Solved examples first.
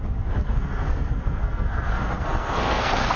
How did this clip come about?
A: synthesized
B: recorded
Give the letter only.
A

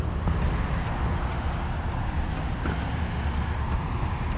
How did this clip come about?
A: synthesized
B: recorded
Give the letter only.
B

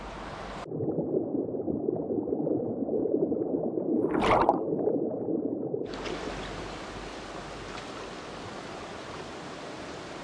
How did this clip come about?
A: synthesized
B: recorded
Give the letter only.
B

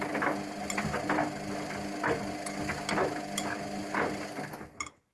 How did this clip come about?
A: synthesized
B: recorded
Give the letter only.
B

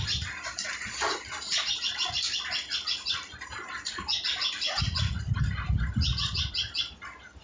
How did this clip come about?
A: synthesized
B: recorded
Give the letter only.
A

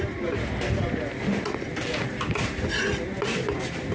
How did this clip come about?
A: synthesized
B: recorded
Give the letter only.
B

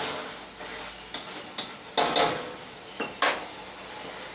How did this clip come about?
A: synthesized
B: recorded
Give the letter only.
B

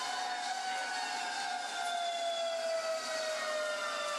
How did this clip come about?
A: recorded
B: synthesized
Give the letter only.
A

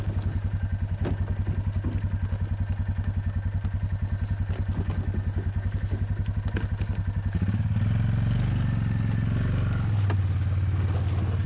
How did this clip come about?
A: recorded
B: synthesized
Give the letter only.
A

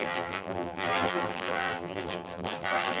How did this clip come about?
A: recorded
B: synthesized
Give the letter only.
B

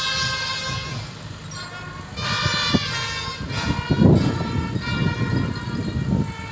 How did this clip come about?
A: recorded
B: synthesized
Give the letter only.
A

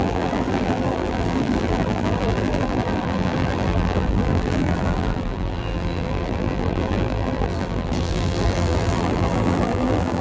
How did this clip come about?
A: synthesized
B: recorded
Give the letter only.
A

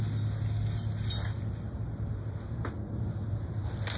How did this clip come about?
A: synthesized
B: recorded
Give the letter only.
B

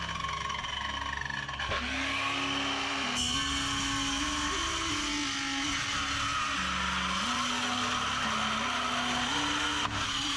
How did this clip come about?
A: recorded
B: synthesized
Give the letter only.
A